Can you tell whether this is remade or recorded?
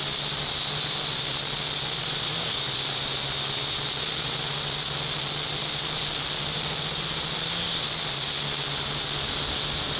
recorded